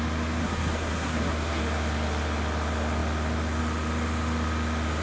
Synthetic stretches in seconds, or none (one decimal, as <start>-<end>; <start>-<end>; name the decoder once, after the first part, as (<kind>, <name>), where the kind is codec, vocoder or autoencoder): 0.4-1.6 (codec, SNAC)

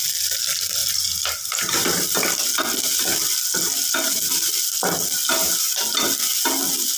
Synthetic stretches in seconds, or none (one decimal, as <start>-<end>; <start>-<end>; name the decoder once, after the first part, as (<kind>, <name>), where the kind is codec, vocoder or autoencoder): none

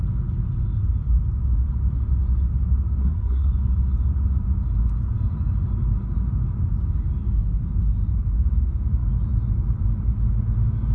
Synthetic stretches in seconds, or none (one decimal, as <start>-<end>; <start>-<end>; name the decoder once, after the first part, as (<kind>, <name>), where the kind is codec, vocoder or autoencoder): 3.0-3.5 (codec, SNAC)